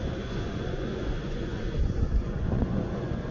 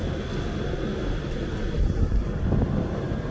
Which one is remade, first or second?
first